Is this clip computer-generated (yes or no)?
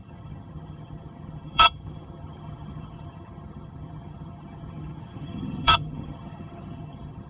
yes